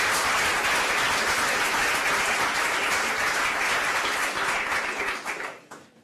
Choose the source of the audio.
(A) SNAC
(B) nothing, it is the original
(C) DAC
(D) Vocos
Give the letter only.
B